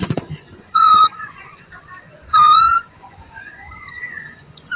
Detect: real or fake fake